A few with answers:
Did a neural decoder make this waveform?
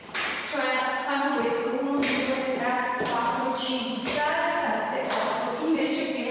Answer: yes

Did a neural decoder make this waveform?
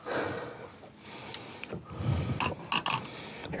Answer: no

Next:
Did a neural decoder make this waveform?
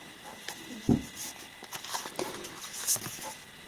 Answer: no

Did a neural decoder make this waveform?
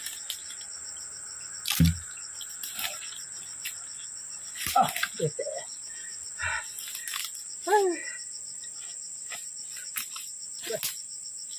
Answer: no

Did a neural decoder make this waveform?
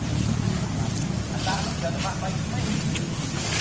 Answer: no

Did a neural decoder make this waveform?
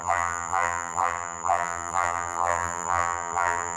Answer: yes